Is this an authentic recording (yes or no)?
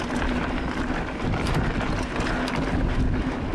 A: yes